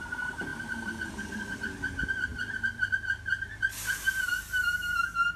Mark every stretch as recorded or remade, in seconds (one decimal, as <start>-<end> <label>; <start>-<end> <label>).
0.0-0.5 recorded; 0.5-1.6 remade; 1.6-2.3 recorded; 2.3-2.9 remade; 2.9-5.4 recorded